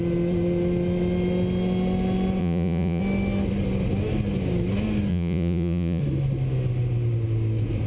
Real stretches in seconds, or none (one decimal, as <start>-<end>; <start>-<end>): 0.0-2.4; 3.0-5.1; 6.0-7.9